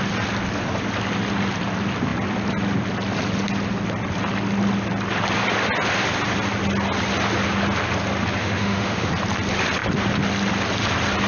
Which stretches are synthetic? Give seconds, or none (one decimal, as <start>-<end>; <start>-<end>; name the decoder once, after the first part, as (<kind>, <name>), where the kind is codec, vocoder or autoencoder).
8.4-9.1 (autoencoder, DAC-VAE)